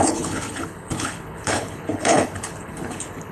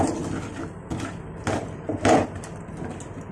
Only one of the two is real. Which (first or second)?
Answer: second